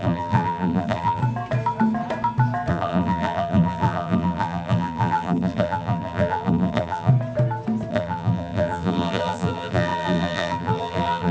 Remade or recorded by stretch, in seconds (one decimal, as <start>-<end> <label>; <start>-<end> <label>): 0.0-1.2 remade; 1.2-2.7 recorded; 2.7-7.1 remade; 7.1-7.9 recorded; 7.9-11.3 remade